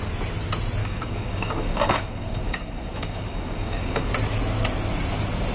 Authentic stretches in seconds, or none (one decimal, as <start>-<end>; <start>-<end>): 0.0-0.8; 4.1-5.5